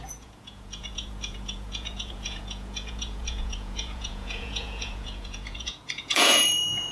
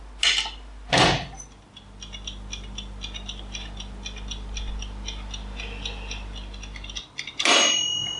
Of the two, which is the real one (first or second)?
second